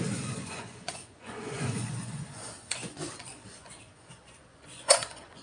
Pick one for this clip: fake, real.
fake